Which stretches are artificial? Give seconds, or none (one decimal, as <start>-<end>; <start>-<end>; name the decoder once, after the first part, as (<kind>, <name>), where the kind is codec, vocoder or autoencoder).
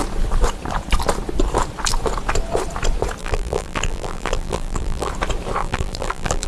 3.2-5.1 (vocoder, BigVGAN v2); 5.6-6.5